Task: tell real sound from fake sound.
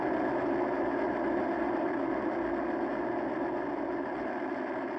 real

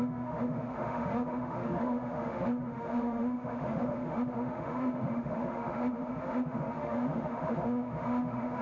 fake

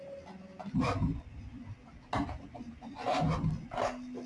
real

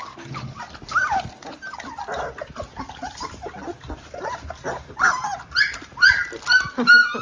real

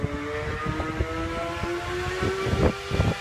real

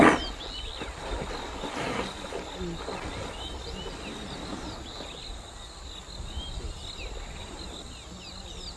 real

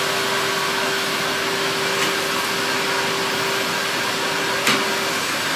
real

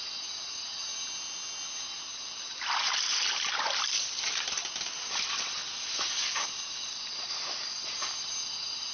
real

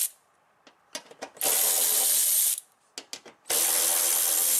real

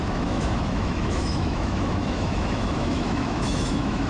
fake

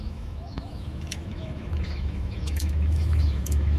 fake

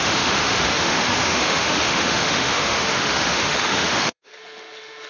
fake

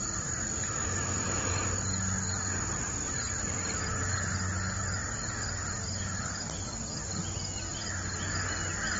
real